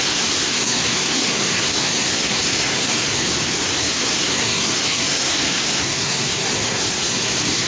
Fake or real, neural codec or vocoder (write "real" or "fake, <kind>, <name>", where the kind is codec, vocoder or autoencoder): fake, codec, SNAC